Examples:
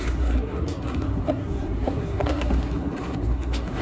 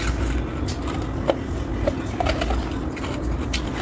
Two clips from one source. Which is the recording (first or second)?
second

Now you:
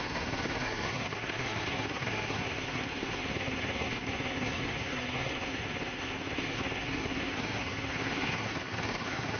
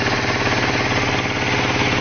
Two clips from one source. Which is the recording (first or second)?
second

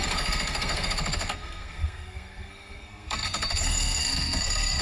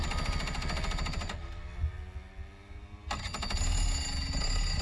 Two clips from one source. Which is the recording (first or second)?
second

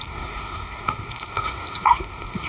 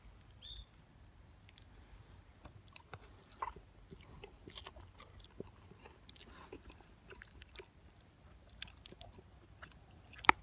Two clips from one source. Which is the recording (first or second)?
second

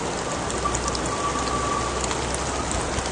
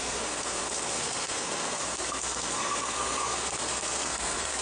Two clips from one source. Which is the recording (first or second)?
first